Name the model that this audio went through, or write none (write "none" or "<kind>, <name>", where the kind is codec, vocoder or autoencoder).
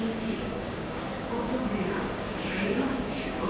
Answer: codec, DAC